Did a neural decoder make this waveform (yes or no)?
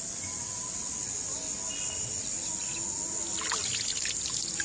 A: no